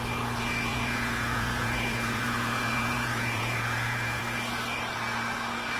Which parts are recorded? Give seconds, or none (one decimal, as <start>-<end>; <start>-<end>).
0.0-0.7; 4.2-5.8